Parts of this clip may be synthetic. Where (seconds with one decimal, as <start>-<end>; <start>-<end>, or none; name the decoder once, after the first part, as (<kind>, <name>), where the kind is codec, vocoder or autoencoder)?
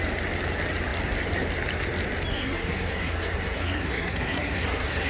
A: 2.3-5.1 (codec, SNAC)